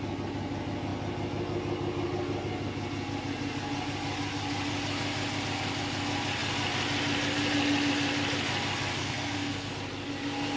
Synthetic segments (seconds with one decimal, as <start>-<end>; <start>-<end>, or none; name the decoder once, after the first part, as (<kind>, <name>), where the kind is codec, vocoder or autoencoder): 9.0-9.7 (codec, SNAC)